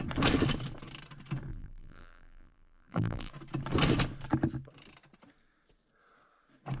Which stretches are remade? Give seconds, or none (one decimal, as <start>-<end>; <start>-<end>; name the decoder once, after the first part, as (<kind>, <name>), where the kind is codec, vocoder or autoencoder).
1.5-3.3 (vocoder, BigVGAN v2)